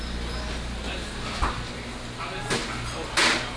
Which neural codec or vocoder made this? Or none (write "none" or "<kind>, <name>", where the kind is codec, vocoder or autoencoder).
none